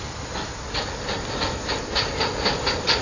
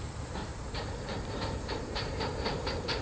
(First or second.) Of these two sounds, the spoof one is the second